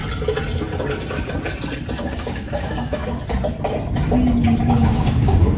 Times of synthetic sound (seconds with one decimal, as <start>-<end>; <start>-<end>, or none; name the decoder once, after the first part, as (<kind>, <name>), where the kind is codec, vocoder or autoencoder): 2.0-3.0 (codec, DAC); 4.6-5.6